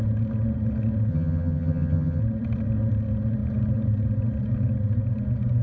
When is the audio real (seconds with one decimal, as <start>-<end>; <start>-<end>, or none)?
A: 0.0-1.1; 2.2-5.6